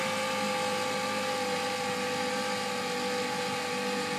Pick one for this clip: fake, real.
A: real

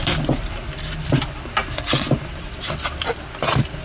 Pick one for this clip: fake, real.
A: real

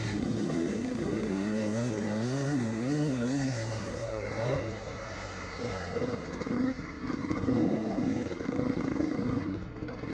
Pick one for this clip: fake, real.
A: fake